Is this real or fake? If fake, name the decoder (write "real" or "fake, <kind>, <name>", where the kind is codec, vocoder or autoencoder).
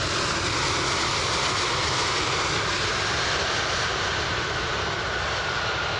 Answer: real